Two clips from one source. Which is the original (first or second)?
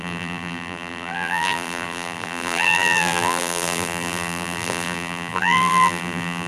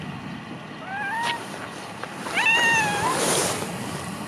second